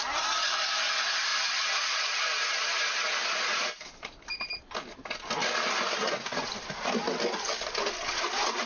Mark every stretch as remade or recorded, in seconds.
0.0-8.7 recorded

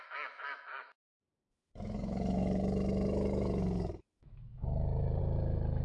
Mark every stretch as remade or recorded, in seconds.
0.0-5.8 remade